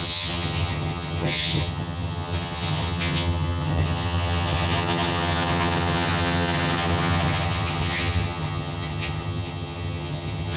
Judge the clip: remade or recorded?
remade